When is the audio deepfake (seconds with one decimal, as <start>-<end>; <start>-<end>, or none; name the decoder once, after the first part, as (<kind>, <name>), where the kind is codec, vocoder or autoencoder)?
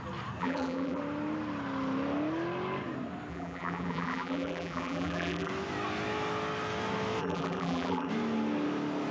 0.4-1.0 (vocoder, BigVGAN v2); 3.3-5.5; 7.2-8.1